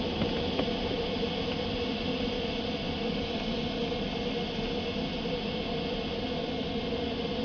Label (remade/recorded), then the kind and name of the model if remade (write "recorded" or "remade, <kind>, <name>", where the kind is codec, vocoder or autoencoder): recorded